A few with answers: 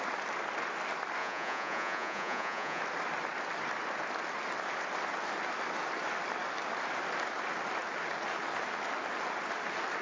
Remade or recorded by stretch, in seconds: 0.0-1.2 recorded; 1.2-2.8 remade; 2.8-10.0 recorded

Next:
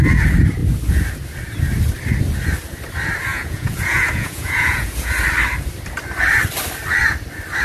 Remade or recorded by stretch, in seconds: 0.0-3.3 recorded; 3.3-5.1 remade; 5.1-7.6 recorded

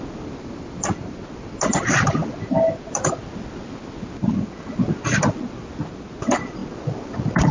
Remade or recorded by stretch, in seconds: 0.0-7.5 recorded

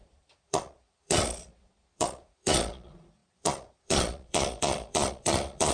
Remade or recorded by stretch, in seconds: 0.0-5.7 remade

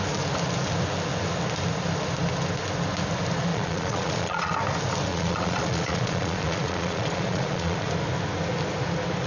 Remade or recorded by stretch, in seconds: 0.0-3.5 recorded; 3.5-4.5 remade; 4.5-5.1 recorded; 5.1-7.9 remade; 7.9-9.3 recorded

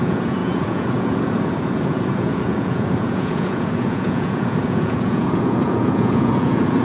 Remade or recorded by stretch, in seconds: 0.0-6.8 remade

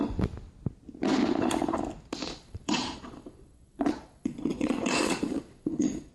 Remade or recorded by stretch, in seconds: 0.0-2.2 recorded; 2.2-6.1 remade

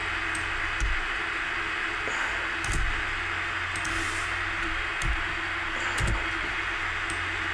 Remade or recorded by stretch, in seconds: 0.0-7.5 recorded